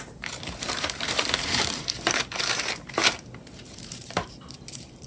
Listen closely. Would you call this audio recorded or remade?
remade